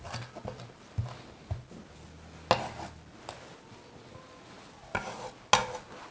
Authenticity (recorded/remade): recorded